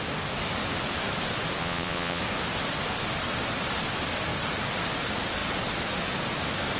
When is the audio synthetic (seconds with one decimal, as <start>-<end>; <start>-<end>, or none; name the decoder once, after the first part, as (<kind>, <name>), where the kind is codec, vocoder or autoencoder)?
1.6-2.2 (vocoder, Vocos)